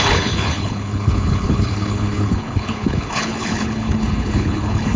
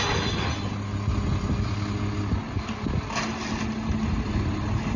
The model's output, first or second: first